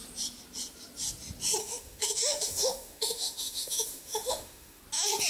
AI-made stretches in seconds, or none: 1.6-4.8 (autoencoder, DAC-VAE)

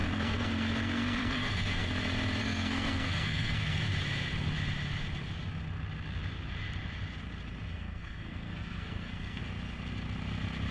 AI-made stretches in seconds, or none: 0.0-1.9 (codec, SNAC); 2.4-3.8; 7.7-9.4